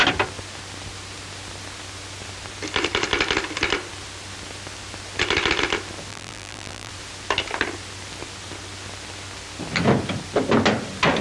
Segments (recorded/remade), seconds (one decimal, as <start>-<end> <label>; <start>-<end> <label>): 0.0-6.1 recorded; 6.1-6.9 remade; 6.9-11.2 recorded